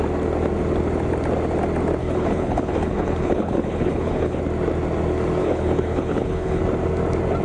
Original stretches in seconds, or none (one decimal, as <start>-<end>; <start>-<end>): 0.0-2.0; 4.4-5.4; 6.6-7.4